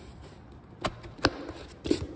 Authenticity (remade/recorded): recorded